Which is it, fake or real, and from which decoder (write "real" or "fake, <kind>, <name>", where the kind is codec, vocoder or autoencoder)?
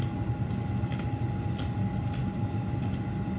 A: real